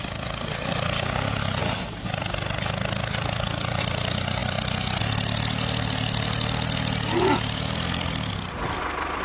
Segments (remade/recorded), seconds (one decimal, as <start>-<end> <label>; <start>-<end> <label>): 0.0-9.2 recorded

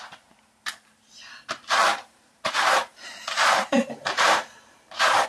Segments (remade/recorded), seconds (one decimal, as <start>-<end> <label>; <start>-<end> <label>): 0.0-1.9 recorded; 1.9-5.3 remade

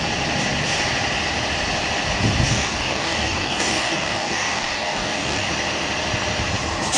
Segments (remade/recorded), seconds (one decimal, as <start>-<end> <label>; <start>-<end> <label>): 0.0-2.5 recorded; 2.5-5.5 remade; 5.5-7.0 recorded

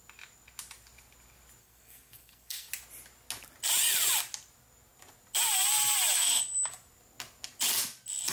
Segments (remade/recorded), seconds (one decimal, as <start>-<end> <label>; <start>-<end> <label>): 0.0-1.6 recorded; 1.6-2.7 remade; 2.7-8.3 recorded

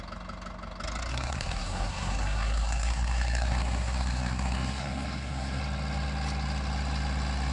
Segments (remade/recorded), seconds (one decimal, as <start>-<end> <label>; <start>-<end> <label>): 0.0-1.1 recorded; 1.1-5.6 remade; 5.6-7.5 recorded

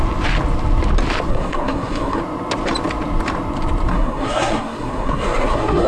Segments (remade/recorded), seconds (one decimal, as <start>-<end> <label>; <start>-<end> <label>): 0.0-1.3 recorded; 1.3-2.2 remade; 2.2-3.9 recorded; 3.9-5.9 remade